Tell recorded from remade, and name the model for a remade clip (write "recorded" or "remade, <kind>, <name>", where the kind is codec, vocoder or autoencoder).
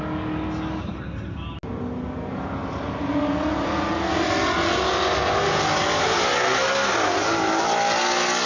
recorded